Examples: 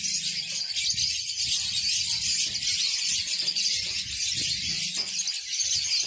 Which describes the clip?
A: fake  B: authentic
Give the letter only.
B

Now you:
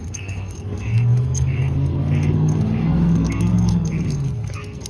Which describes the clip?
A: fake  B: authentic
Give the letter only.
A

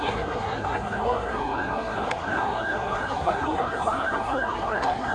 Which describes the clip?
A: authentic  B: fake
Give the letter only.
B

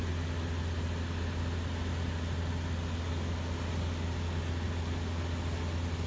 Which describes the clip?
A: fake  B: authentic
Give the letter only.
B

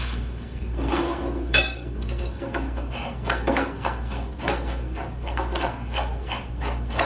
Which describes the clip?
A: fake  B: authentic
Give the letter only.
A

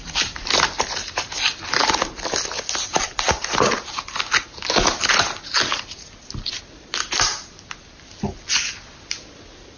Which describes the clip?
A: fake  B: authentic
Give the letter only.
B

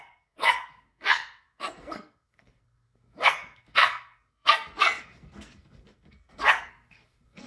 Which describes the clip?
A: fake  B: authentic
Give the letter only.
A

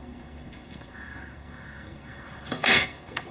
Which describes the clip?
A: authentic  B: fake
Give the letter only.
B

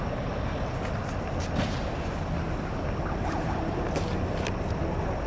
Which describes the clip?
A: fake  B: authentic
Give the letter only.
B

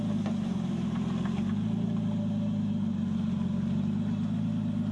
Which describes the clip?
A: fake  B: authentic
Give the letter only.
B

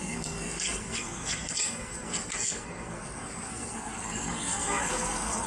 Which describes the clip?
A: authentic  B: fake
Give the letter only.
B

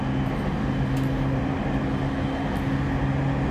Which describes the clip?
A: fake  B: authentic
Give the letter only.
B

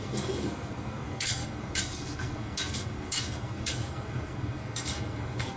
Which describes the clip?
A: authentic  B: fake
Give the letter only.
B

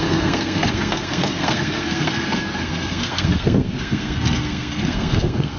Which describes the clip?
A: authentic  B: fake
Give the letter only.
B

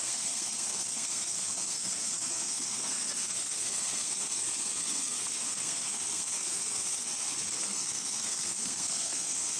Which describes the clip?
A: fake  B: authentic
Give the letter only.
A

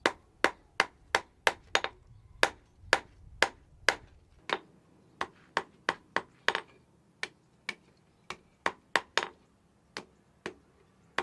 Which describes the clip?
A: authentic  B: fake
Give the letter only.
A